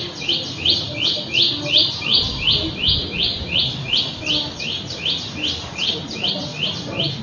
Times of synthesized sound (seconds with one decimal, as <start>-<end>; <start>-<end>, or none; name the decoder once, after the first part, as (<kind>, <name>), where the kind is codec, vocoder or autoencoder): none